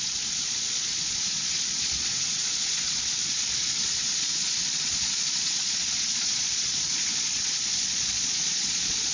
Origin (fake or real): fake